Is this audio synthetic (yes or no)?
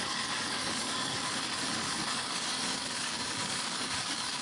yes